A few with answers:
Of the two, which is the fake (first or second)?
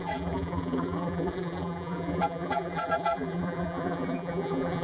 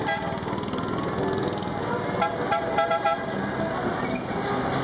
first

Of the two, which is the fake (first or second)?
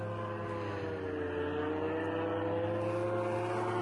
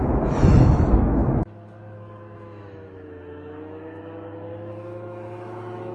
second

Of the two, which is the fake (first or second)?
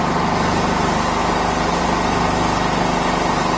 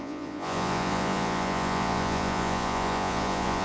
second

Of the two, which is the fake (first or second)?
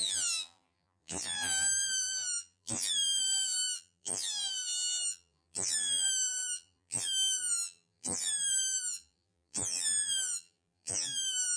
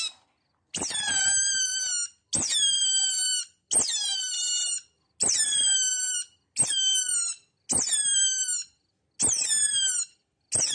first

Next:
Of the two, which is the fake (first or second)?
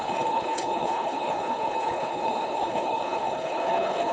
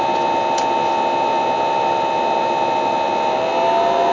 first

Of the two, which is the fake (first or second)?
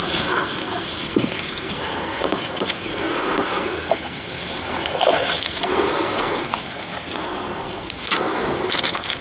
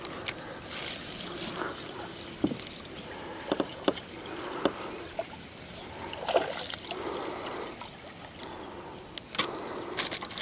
first